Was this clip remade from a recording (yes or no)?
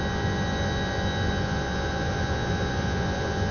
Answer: yes